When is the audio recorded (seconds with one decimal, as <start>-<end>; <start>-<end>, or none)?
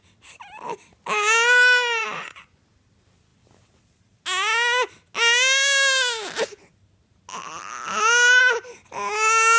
0.0-2.0; 2.6-9.6